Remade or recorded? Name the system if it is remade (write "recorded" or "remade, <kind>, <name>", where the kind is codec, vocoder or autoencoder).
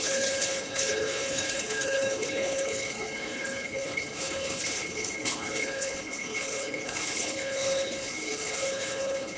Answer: remade, codec, HILCodec